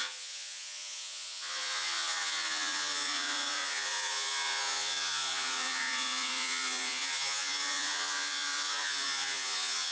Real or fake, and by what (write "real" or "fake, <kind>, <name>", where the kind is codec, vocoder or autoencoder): fake, vocoder, Vocos